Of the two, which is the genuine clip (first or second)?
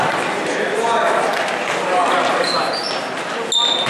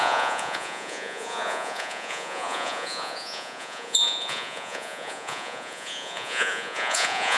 first